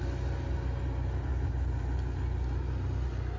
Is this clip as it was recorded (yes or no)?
yes